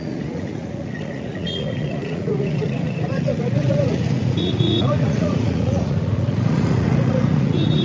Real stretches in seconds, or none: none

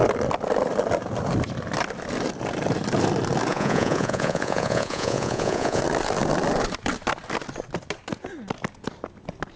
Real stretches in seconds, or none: 0.0-3.5; 5.8-9.6